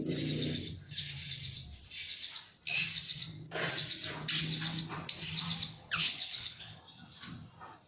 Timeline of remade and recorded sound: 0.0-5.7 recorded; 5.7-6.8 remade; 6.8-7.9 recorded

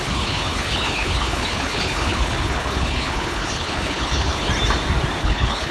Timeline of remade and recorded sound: 0.0-4.5 remade; 4.5-5.2 recorded; 5.2-5.7 remade